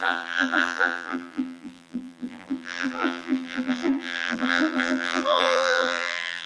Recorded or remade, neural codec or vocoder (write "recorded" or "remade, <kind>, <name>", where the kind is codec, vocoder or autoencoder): remade, vocoder, BigVGAN v2